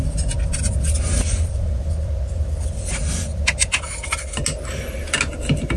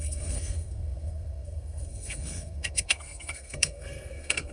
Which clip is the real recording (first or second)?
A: first